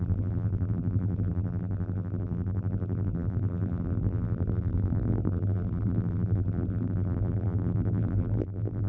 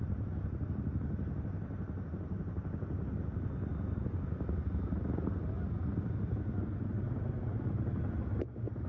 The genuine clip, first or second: second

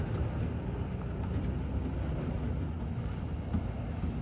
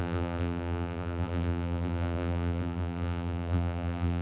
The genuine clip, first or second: first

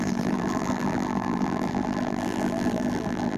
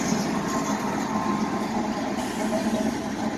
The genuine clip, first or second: second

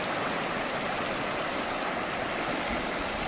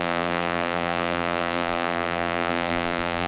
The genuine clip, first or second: first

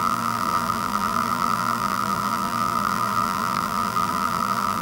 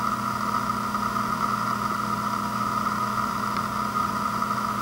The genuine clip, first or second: second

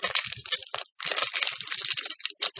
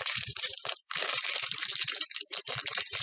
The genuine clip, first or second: first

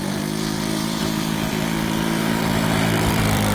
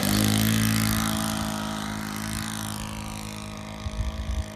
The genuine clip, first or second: second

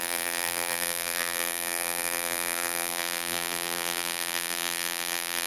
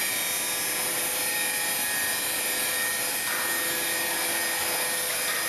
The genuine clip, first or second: second